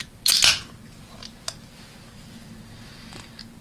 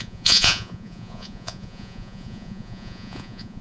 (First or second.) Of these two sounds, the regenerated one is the second